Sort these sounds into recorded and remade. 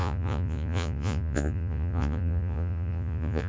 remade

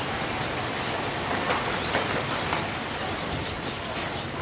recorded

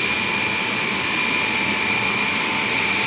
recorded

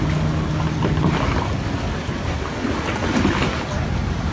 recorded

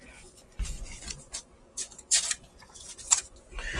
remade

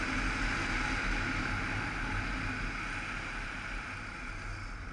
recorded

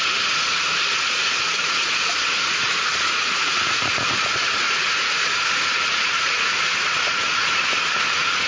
remade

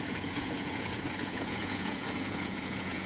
remade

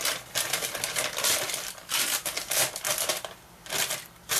recorded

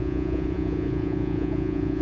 remade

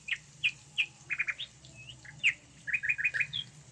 recorded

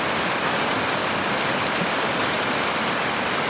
recorded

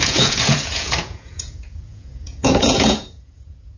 remade